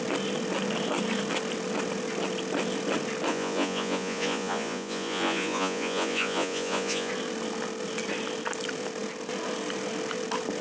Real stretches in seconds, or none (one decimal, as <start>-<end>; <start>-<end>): 0.0-3.3; 7.1-10.6